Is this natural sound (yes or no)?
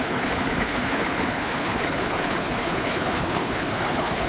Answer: no